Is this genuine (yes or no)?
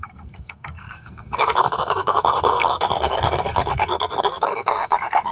no